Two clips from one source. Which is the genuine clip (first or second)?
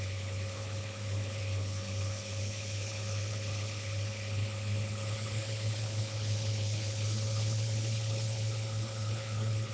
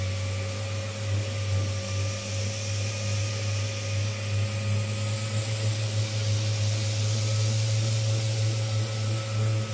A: second